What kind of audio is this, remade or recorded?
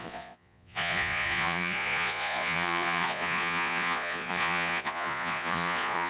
remade